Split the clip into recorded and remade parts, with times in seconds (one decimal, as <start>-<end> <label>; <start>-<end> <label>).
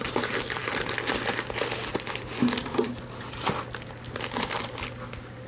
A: 0.0-5.5 recorded